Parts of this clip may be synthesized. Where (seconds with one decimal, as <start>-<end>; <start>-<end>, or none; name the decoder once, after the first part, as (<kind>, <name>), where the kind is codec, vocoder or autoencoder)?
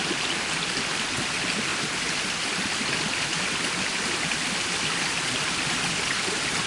none